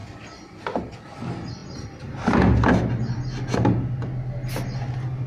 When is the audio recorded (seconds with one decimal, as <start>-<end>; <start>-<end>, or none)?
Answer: 0.0-5.3